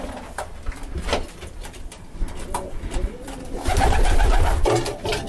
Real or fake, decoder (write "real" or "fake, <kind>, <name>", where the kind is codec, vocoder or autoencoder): fake, vocoder, BigVGAN v2